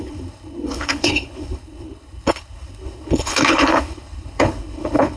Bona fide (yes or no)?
no